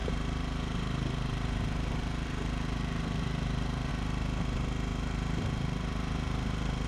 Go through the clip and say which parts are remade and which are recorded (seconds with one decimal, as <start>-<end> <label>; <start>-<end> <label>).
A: 0.0-3.9 remade; 3.9-4.9 recorded; 4.9-5.8 remade; 5.8-6.9 recorded